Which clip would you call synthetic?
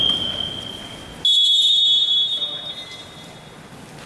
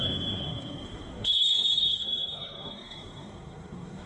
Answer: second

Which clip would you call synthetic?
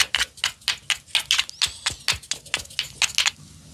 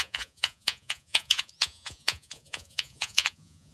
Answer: second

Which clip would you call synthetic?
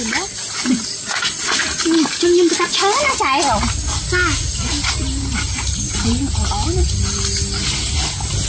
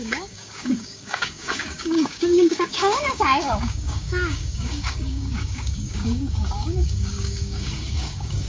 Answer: second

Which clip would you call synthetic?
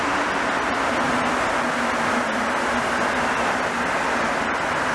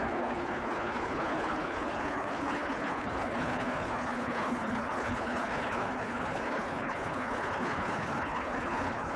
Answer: second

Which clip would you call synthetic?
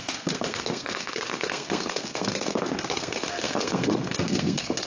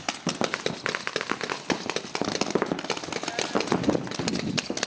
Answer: first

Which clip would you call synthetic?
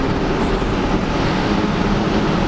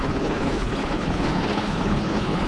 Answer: second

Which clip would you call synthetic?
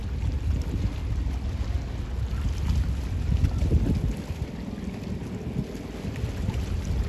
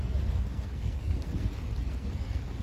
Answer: second